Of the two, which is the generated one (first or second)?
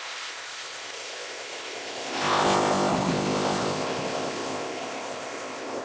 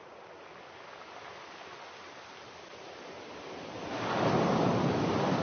first